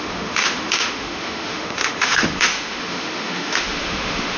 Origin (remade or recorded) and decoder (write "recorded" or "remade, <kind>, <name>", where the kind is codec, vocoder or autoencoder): remade, autoencoder, DAC-VAE